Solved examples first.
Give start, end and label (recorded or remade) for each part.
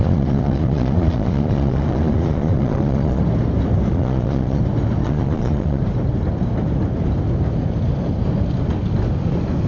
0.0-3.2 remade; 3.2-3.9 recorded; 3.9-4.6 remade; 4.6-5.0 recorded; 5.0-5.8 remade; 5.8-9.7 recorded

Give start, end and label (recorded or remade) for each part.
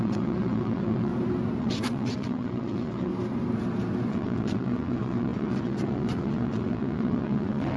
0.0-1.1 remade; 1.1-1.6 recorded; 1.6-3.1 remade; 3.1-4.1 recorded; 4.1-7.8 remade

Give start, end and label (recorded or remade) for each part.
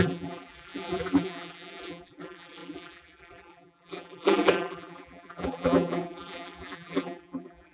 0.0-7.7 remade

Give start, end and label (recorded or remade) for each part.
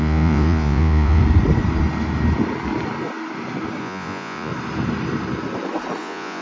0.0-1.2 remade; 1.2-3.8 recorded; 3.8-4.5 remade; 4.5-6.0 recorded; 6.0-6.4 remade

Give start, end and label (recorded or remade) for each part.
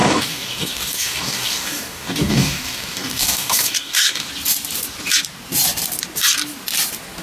0.0-4.3 remade; 4.3-7.2 recorded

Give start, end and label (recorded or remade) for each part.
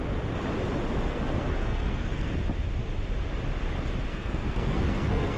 0.0-1.1 recorded; 1.1-2.4 remade; 2.4-4.1 recorded; 4.1-5.4 remade